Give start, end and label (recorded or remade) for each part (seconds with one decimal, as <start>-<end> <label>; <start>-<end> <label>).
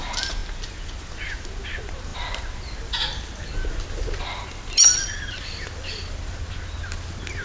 0.0-7.4 recorded